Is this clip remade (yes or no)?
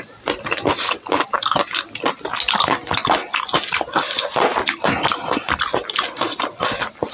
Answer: no